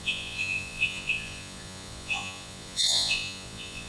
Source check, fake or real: fake